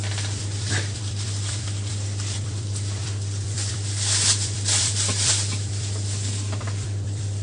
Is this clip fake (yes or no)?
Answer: yes